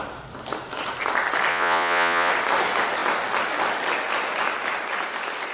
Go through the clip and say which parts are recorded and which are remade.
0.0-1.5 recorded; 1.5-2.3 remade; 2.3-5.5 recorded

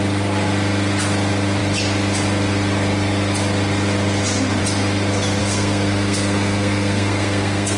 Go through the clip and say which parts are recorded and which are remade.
0.0-5.4 recorded; 5.4-7.8 remade

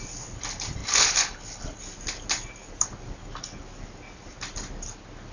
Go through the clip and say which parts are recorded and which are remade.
0.0-0.8 recorded; 0.8-1.8 remade; 1.8-5.3 recorded

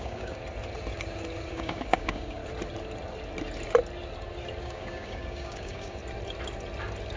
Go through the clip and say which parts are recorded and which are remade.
0.0-0.4 remade; 0.4-1.5 recorded; 1.5-2.4 remade; 2.4-4.6 recorded; 4.6-6.0 remade; 6.0-7.2 recorded

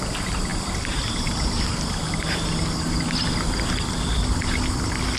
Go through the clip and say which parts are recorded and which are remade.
0.0-5.2 recorded

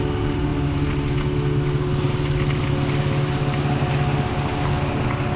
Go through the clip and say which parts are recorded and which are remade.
0.0-5.4 recorded

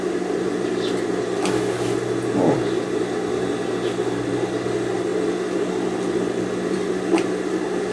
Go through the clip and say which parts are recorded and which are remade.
0.0-7.9 recorded

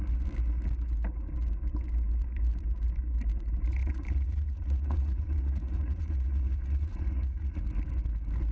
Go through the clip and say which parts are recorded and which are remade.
0.0-3.7 recorded; 3.7-7.6 remade; 7.6-8.5 recorded